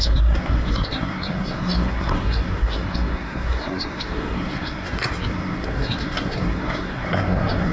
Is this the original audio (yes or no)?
no